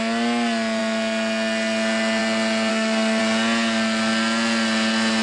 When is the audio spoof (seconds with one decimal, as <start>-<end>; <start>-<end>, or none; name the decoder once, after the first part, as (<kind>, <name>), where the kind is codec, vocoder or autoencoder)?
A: 2.7-3.2 (codec, SNAC)